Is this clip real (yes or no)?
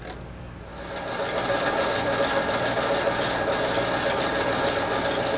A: yes